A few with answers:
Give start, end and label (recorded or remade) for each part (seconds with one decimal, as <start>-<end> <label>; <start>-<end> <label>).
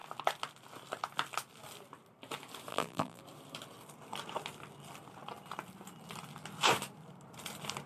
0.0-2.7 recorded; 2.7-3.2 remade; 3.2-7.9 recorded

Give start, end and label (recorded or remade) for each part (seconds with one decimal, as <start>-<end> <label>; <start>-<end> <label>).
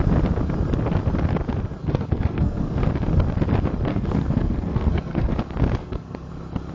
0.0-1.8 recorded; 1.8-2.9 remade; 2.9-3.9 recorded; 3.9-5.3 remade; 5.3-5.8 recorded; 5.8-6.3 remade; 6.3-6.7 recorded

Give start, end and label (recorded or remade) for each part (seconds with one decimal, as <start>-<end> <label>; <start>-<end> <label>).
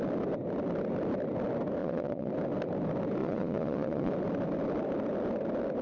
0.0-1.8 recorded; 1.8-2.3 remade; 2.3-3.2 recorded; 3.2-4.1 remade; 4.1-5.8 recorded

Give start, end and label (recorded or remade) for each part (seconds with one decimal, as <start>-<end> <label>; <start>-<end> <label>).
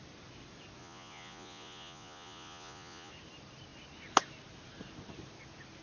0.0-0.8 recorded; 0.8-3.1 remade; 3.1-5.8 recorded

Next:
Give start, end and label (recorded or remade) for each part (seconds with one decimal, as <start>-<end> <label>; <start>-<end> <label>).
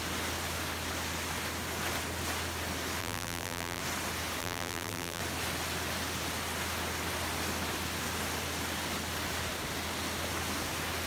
0.0-3.0 recorded; 3.0-3.8 remade; 3.8-4.4 recorded; 4.4-5.2 remade; 5.2-11.1 recorded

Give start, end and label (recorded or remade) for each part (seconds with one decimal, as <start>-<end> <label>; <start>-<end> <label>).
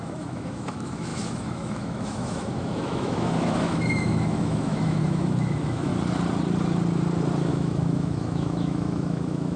0.0-5.9 remade; 5.9-7.5 recorded; 7.5-9.6 remade